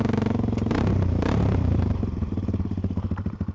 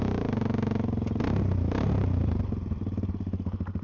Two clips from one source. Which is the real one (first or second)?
second